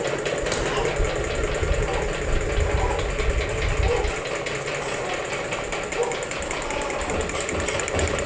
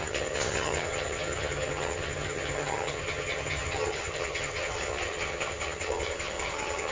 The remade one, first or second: second